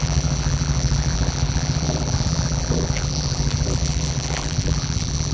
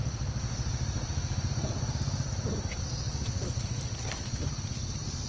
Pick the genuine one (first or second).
second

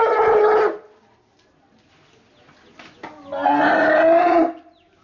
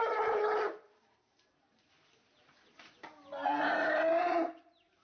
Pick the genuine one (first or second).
first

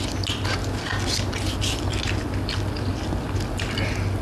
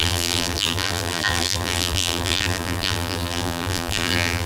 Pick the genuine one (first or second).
first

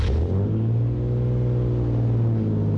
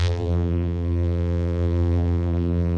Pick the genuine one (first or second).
first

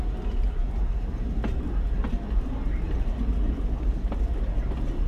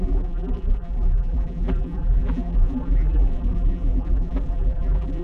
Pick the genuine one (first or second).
first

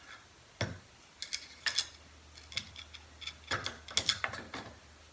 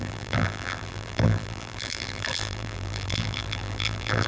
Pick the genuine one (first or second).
first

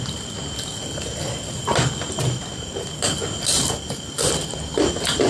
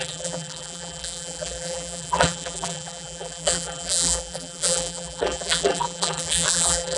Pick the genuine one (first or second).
first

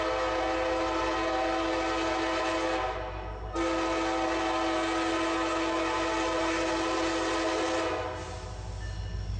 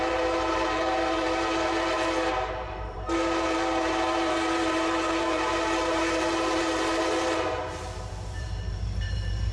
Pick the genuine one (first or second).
first